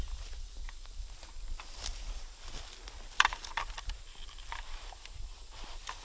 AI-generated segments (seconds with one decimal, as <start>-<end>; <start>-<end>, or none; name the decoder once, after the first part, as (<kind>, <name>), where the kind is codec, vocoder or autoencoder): none

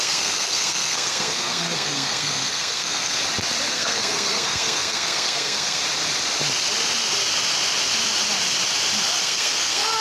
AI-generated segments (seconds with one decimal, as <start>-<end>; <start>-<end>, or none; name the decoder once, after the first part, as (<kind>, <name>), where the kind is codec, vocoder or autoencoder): 0.0-3.2 (codec, SNAC); 3.7-5.8; 9.2-10.0

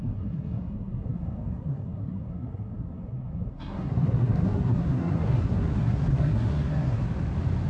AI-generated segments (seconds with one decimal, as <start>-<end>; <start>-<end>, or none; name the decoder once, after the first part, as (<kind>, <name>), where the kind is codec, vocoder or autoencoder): 0.0-7.0 (codec, SNAC)

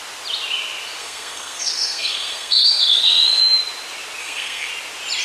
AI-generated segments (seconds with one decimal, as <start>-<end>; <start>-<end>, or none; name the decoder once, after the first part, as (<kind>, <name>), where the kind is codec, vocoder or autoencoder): 1.0-3.4 (codec, SNAC); 4.2-4.7

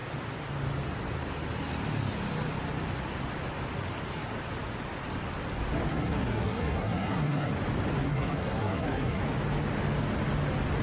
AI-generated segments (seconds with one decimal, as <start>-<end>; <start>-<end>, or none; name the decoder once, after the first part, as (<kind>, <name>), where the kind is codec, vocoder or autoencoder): 5.9-7.5 (codec, SNAC); 8.0-9.2

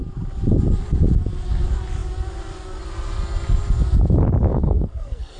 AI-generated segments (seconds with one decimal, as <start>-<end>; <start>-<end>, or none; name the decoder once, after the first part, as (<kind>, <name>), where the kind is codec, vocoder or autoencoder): 4.5-5.4 (codec, SNAC)